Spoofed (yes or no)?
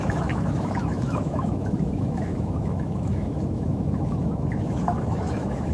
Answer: yes